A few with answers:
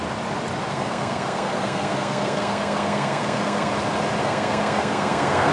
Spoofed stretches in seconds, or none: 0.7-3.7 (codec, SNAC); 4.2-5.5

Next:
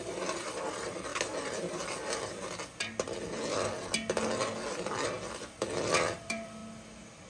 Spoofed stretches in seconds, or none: 0.0-1.1 (vocoder, BigVGAN v2); 5.5-6.6

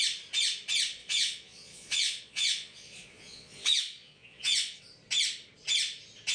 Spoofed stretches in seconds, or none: 1.0-4.8 (vocoder, Vocos)

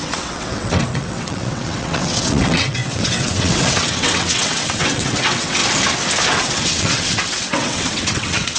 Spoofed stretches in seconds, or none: 0.0-5.6 (vocoder, WaveNeXt); 6.3-8.6

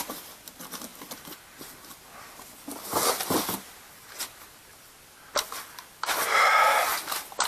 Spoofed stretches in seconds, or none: none

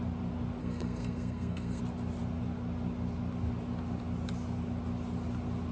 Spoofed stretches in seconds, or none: 0.6-1.8 (codec, SNAC)

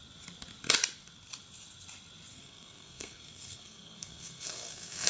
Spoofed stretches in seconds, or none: 2.3-5.1 (codec, SNAC)